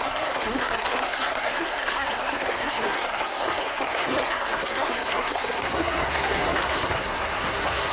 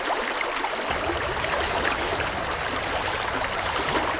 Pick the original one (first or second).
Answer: second